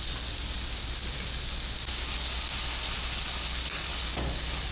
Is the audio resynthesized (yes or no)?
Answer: no